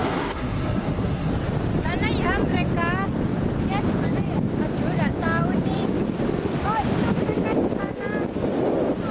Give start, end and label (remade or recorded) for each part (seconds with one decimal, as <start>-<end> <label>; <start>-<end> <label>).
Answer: 0.0-1.3 remade; 1.3-9.1 recorded